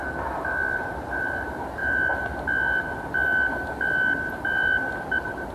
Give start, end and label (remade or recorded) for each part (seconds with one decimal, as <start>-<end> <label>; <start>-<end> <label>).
0.0-5.5 recorded